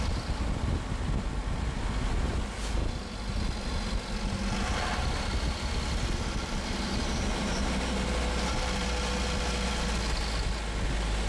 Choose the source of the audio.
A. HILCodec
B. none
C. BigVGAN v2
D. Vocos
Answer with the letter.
B